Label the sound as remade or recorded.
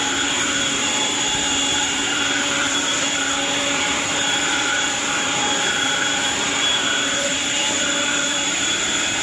remade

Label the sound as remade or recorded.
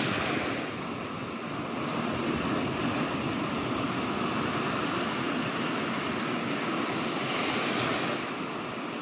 recorded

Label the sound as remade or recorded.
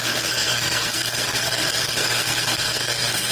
remade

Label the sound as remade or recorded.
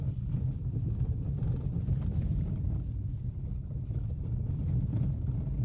remade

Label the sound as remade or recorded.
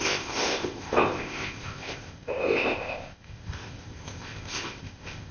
remade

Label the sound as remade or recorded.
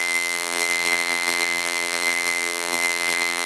remade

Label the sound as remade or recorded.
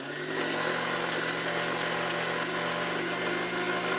recorded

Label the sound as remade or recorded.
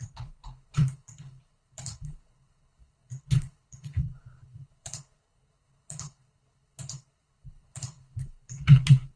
remade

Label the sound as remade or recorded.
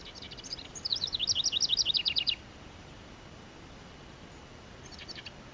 recorded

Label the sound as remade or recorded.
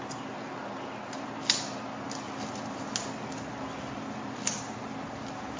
recorded